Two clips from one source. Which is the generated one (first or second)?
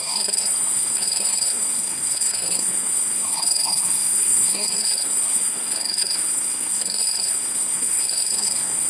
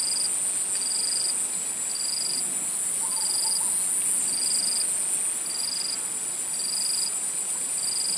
first